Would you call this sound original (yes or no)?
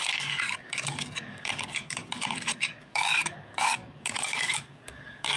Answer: no